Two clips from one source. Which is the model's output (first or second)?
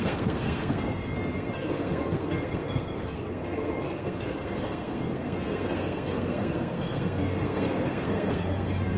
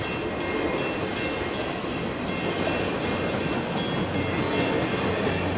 first